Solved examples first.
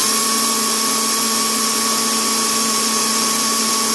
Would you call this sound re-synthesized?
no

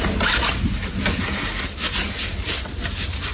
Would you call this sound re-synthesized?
no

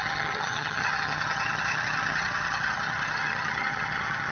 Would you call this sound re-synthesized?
yes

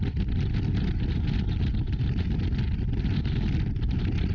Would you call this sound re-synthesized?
no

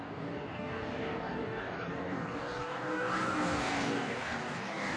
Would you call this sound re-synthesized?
yes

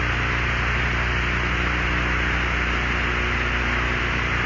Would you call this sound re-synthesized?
no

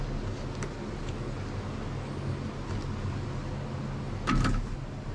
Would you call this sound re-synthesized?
no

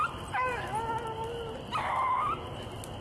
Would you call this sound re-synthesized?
no